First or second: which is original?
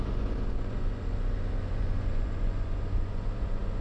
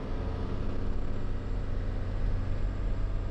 second